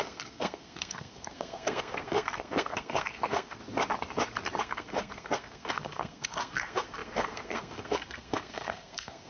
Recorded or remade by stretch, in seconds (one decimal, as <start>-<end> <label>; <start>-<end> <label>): 0.0-3.6 remade; 3.6-4.6 recorded; 4.6-9.3 remade